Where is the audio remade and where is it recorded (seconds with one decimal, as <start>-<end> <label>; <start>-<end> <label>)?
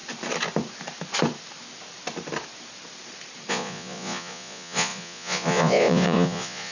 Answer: 0.0-3.5 recorded; 3.5-6.7 remade